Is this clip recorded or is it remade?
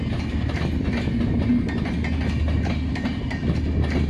recorded